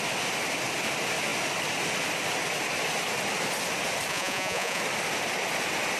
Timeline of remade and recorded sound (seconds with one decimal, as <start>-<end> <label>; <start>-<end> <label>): 0.0-4.1 recorded; 4.1-4.8 remade; 4.8-6.0 recorded